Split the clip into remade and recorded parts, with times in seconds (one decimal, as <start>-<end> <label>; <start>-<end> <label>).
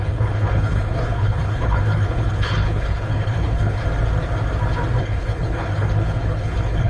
0.0-3.8 remade; 3.8-5.0 recorded; 5.0-6.9 remade